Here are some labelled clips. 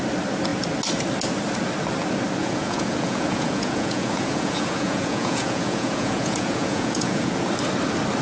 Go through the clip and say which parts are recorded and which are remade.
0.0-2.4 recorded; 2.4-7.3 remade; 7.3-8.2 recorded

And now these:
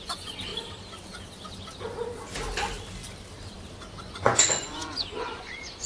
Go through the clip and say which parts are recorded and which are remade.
0.0-0.5 remade; 0.5-4.0 recorded; 4.0-5.9 remade

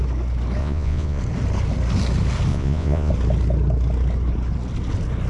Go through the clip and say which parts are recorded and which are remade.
0.0-0.6 recorded; 0.6-1.2 remade; 1.2-2.5 recorded; 2.5-3.1 remade; 3.1-5.3 recorded

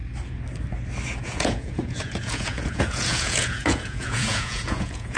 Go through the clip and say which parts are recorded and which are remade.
0.0-1.2 recorded; 1.2-5.2 remade